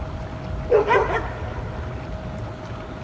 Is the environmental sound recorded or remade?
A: recorded